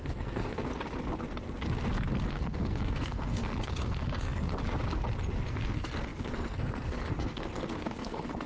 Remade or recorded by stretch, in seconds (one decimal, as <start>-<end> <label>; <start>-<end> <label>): 0.0-0.7 remade; 0.7-2.2 recorded; 2.2-4.5 remade; 4.5-5.5 recorded; 5.5-8.5 remade